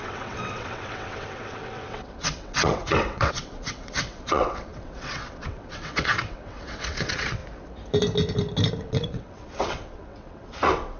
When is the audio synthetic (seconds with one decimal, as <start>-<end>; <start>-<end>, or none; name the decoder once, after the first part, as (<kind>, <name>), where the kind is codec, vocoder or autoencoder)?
0.0-7.4 (vocoder, WaveNeXt); 8.8-11.0